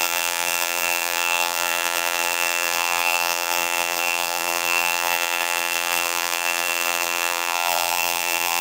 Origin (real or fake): fake